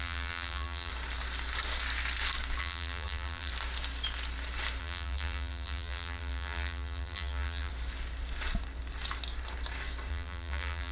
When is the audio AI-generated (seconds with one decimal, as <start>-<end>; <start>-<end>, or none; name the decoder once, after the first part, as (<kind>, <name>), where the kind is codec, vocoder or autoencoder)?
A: 0.0-0.9 (vocoder, BigVGAN v2); 2.6-3.5; 4.8-7.7; 10.1-10.9

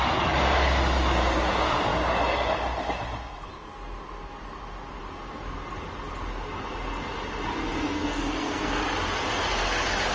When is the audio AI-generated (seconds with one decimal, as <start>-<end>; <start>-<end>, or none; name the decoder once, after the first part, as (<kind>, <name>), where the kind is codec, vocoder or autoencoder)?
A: 7.7-8.8 (codec, SNAC)

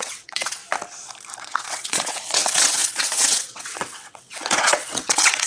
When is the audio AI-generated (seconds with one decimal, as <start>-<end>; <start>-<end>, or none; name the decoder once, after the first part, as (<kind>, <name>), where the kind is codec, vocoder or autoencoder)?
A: 0.0-0.6 (vocoder, WaveNeXt); 1.4-5.5

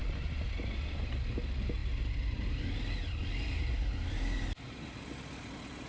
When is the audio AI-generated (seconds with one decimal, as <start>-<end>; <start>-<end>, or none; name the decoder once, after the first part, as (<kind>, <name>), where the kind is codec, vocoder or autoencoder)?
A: 0.0-1.1 (vocoder, BigVGAN v2)

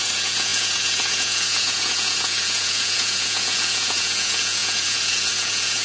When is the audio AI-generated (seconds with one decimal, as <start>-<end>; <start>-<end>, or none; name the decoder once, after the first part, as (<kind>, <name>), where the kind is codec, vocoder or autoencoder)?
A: 0.0-5.8 (vocoder, Vocos)

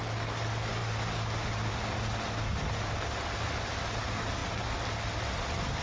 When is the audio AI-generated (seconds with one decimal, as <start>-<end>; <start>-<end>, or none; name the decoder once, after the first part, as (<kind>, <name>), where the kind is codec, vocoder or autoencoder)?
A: none